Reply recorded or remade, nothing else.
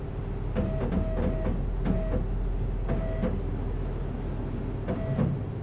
recorded